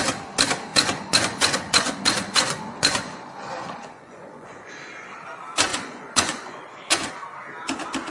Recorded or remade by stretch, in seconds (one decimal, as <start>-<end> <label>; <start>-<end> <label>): 0.0-0.7 recorded; 0.7-4.7 remade; 4.7-5.7 recorded; 5.7-7.1 remade; 7.1-8.1 recorded